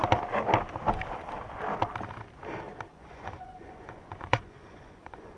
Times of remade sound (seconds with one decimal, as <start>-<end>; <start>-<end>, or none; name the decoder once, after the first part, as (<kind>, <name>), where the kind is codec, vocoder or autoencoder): 2.9-5.4 (vocoder, Vocos)